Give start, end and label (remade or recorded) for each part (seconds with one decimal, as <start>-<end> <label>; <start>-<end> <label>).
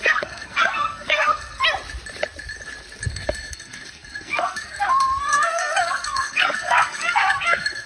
0.0-1.6 remade; 1.6-3.1 recorded; 3.1-7.9 remade